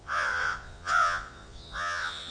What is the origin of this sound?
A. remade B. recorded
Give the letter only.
A